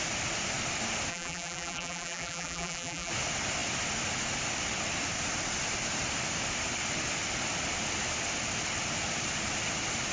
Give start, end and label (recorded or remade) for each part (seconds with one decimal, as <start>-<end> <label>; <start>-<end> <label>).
0.0-1.1 recorded; 1.1-3.1 remade; 3.1-10.1 recorded